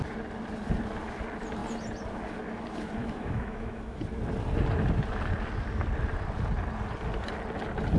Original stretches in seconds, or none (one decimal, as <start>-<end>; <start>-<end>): 0.0-3.0; 4.0-8.0